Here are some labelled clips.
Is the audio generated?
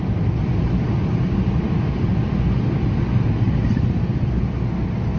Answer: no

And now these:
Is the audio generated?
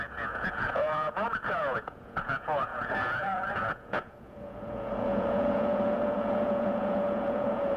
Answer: yes